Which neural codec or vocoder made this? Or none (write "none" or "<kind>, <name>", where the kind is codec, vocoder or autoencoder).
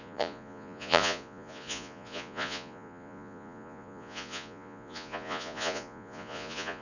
vocoder, Vocos